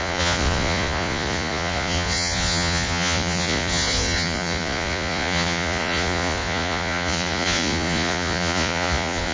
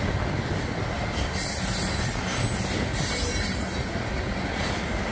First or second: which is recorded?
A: second